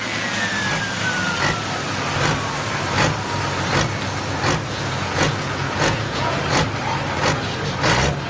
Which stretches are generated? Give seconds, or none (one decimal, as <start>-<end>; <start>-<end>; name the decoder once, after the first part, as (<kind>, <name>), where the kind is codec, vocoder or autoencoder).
0.0-0.5 (vocoder, Vocos); 4.7-6.4